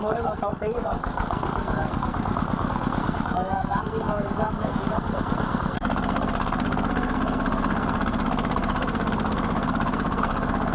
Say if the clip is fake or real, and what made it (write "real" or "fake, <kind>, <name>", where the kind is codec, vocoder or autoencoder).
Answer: fake, codec, SNAC